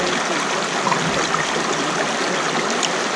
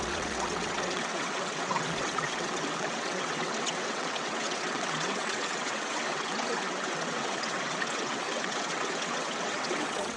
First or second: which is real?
first